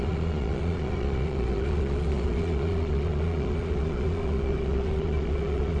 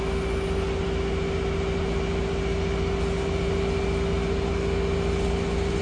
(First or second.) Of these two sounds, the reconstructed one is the first